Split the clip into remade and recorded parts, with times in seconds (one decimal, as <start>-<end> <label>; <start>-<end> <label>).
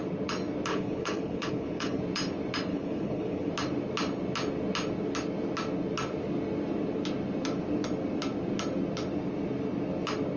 0.0-0.7 recorded; 0.7-2.0 remade; 2.0-2.7 recorded; 2.7-3.5 remade; 3.5-10.4 recorded